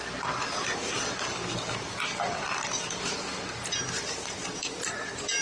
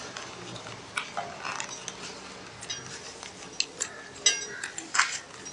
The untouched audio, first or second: second